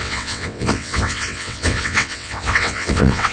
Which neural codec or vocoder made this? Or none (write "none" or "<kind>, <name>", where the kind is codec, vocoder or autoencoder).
vocoder, WaveNeXt